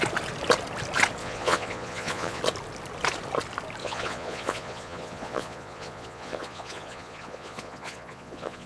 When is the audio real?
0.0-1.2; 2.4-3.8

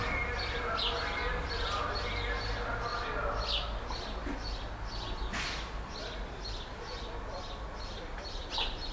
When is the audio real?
0.0-8.9

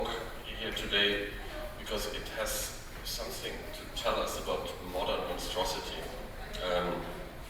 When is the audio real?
0.0-3.4; 6.5-7.5